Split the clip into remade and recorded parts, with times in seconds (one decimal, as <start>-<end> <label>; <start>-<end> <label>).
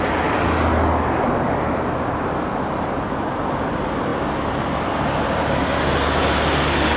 0.0-7.0 recorded